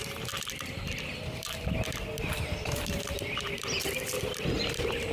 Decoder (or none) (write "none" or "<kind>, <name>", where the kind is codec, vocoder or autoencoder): vocoder, BigVGAN v2